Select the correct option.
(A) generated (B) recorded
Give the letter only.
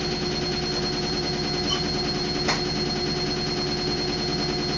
B